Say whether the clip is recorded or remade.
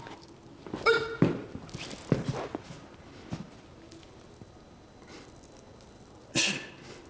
recorded